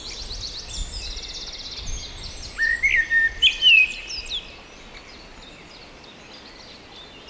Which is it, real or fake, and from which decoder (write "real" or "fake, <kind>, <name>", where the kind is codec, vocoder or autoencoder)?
real